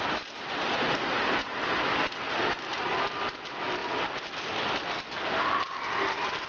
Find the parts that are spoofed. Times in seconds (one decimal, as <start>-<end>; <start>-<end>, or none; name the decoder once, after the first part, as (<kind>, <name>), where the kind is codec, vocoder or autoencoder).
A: none